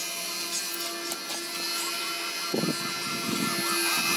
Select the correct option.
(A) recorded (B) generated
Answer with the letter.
A